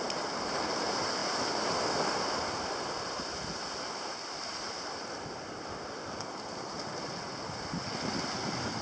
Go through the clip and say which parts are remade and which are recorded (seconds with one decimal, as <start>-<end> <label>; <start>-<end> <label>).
0.0-8.8 recorded